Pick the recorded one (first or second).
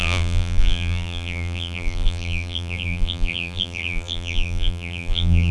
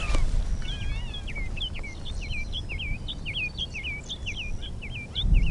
second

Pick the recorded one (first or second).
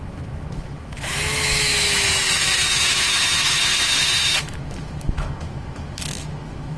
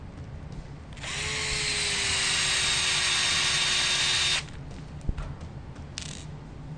second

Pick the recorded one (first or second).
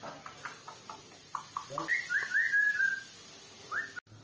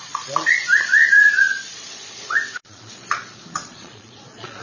first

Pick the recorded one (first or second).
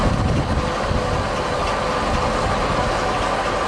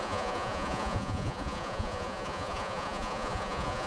first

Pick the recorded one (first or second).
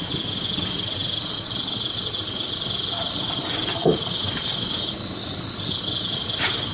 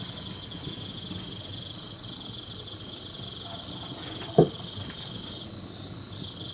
second